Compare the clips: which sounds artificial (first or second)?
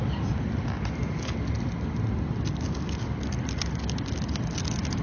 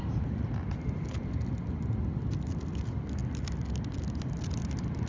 second